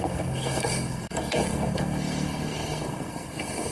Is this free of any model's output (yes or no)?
no